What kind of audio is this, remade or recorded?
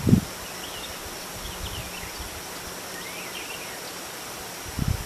remade